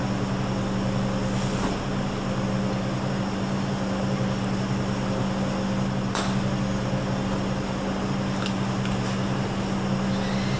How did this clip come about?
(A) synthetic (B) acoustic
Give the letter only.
B